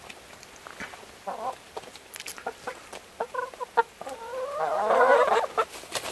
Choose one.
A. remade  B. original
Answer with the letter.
B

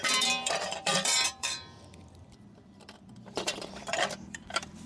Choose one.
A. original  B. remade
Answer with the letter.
B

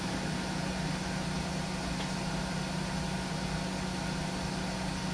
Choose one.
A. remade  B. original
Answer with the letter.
B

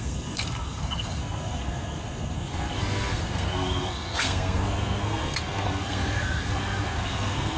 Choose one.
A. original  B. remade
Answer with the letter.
B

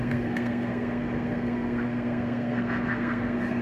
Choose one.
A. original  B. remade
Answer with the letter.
B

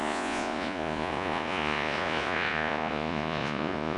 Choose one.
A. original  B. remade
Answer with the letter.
B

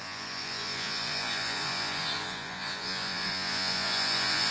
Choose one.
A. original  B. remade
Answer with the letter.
B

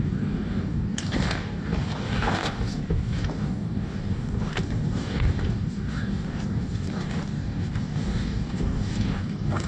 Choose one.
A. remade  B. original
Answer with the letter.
A